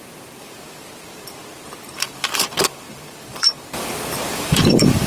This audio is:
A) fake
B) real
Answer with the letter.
A